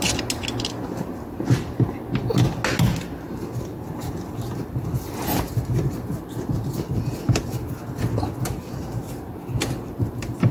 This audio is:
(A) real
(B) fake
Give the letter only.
A